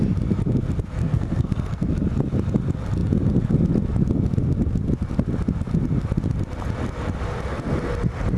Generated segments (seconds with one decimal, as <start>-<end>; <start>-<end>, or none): 1.0-1.9